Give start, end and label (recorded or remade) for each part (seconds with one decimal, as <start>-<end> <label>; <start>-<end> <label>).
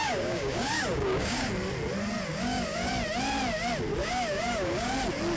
0.0-1.5 remade; 1.5-2.3 recorded; 2.3-2.9 remade; 2.9-4.0 recorded; 4.0-4.9 remade; 4.9-5.4 recorded